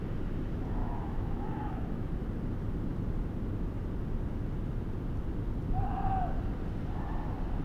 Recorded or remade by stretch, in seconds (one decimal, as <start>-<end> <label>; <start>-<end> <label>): 0.0-0.8 recorded; 0.8-2.1 remade; 2.1-7.6 recorded